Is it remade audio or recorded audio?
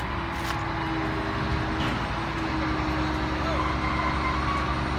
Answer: recorded